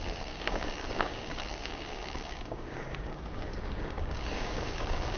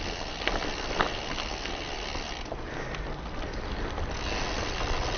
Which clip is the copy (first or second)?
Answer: first